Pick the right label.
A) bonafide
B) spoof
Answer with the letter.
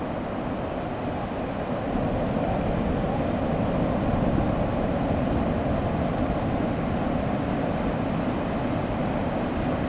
B